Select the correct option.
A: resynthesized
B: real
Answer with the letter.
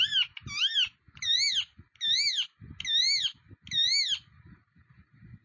B